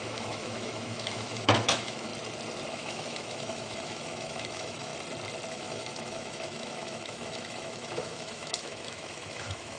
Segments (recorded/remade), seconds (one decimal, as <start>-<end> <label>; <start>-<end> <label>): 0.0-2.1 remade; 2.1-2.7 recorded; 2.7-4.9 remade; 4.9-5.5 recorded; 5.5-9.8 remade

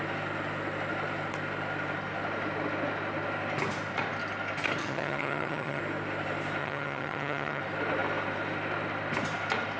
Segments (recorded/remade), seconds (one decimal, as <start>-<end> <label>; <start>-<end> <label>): 0.0-4.8 recorded; 4.8-5.8 remade; 5.8-6.6 recorded; 6.6-7.6 remade; 7.6-9.8 recorded

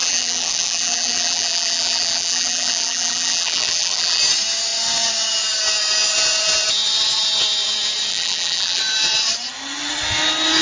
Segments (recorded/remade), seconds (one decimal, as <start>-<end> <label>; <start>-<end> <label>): 0.0-4.2 remade; 4.2-8.1 recorded; 8.1-8.8 remade; 8.8-10.6 recorded

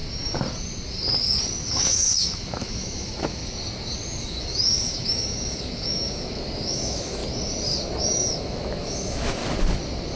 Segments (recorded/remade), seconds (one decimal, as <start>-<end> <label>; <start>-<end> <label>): 0.0-1.7 recorded; 1.7-3.4 remade; 3.4-4.2 recorded; 4.2-7.2 remade; 7.2-8.0 recorded; 8.0-9.4 remade; 9.4-10.2 recorded

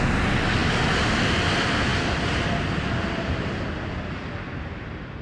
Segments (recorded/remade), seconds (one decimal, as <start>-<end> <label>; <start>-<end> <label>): 0.0-5.2 recorded

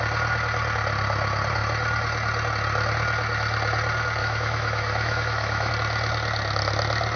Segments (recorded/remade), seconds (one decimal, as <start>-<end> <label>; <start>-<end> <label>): 0.0-4.2 recorded; 4.2-5.7 remade; 5.7-7.2 recorded

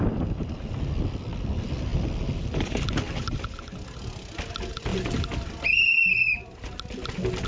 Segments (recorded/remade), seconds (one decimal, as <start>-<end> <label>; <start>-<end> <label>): 0.0-7.5 recorded